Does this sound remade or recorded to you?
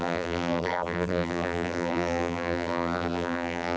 remade